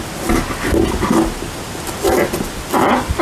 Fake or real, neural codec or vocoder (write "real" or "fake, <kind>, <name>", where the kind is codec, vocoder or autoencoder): real